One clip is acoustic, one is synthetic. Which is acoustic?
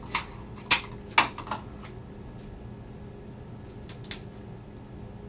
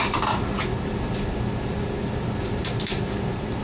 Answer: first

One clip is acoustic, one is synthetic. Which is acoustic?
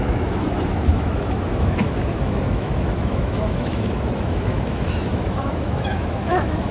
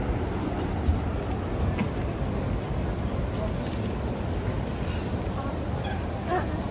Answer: second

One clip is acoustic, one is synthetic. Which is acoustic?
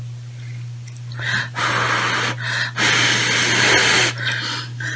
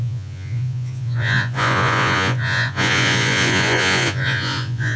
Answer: first